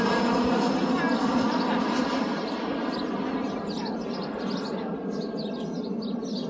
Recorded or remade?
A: recorded